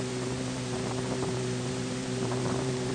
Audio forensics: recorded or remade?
remade